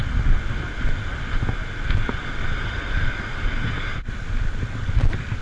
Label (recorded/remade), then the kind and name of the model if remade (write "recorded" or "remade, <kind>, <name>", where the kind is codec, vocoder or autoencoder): recorded